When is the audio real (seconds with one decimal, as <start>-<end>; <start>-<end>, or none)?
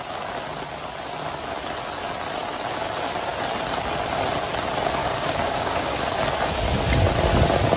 0.0-5.0; 6.0-7.8